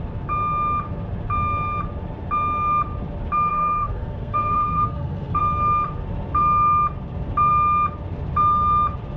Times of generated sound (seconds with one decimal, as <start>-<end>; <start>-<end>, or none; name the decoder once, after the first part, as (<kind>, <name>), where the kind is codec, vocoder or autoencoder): 3.5-5.4 (codec, SNAC)